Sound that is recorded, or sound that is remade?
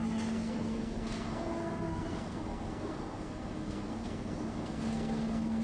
remade